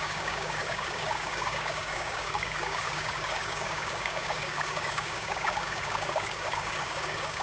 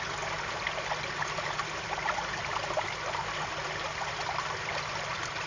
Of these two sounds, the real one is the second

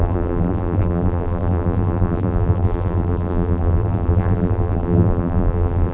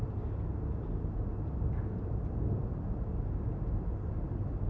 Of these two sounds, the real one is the second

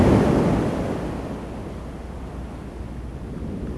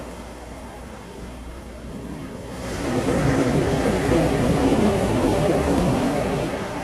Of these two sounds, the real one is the first